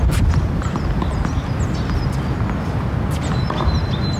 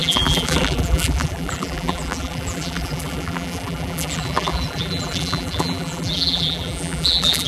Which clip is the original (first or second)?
first